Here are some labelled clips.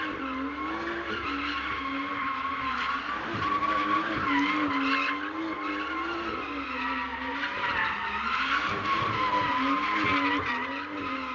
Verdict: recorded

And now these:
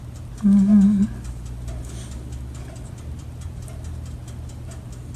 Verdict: recorded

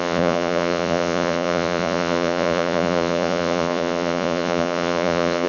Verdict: remade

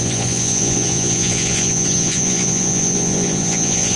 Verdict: remade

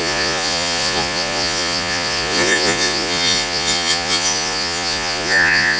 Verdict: remade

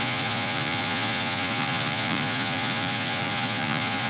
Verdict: remade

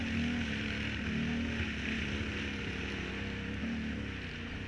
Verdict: recorded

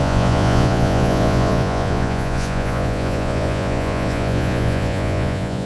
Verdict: remade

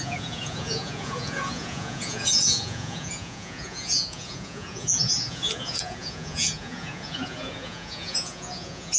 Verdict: remade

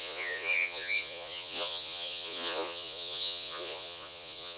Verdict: remade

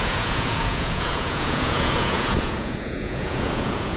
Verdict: remade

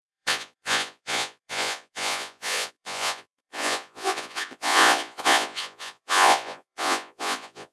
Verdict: remade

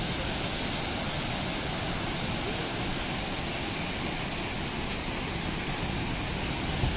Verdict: recorded